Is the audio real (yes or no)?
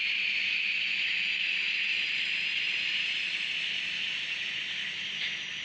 yes